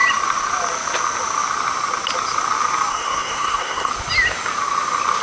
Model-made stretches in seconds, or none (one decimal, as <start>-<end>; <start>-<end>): 2.9-3.9